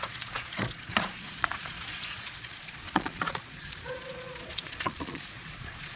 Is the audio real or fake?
fake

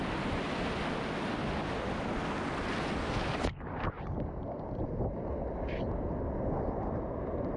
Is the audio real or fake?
real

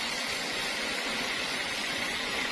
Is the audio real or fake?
fake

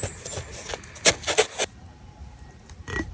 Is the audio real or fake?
real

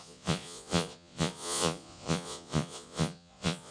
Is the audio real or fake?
fake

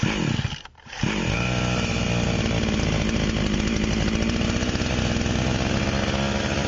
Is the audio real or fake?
real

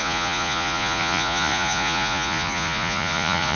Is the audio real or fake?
fake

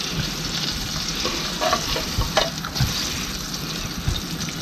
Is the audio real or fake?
real